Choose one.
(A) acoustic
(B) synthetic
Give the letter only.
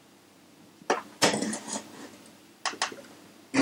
A